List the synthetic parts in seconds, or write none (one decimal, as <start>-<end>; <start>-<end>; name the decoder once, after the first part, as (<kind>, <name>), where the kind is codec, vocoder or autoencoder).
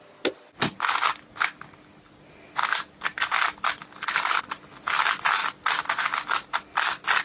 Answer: none